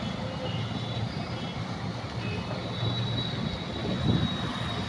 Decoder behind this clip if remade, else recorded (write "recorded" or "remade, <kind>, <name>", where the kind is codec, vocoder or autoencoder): recorded